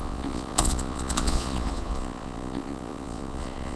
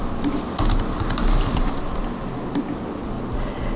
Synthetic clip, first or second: first